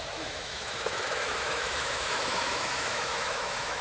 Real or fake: fake